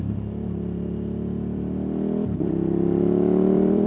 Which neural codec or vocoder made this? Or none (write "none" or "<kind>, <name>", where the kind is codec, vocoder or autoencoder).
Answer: vocoder, BigVGAN v2